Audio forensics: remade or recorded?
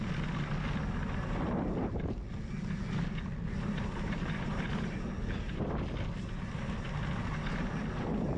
recorded